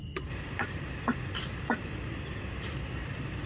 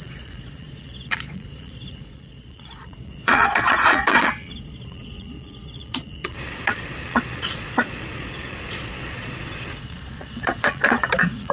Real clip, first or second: first